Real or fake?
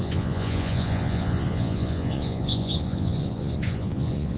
fake